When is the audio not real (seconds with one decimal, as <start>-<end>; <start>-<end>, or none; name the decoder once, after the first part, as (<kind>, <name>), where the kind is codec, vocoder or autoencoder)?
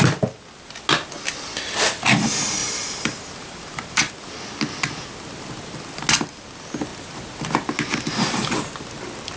2.6-4.1 (vocoder, BigVGAN v2)